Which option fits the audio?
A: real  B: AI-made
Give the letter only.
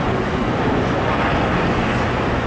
B